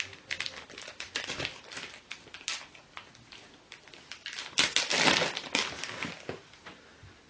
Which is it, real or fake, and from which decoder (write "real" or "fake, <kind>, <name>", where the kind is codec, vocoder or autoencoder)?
real